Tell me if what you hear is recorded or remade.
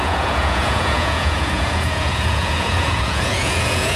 remade